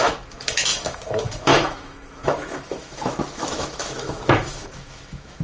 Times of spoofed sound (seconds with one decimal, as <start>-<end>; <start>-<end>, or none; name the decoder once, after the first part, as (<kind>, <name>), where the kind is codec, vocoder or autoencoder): 0.0-5.4 (autoencoder, DAC-VAE)